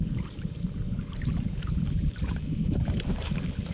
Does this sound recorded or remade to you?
remade